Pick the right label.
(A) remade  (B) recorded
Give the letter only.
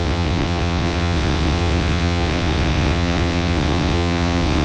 A